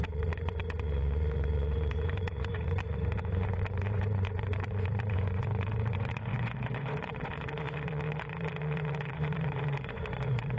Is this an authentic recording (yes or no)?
no